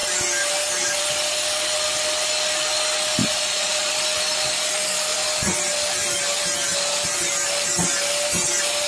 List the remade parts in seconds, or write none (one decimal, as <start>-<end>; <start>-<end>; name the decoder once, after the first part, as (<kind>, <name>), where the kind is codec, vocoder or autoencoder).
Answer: 3.2-3.9 (vocoder, Vocos)